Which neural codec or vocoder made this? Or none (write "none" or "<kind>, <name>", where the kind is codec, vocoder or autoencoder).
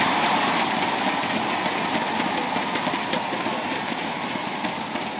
none